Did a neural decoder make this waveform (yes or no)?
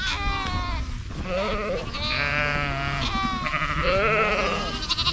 no